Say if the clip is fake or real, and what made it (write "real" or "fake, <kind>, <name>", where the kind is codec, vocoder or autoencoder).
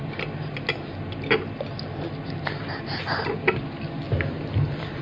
real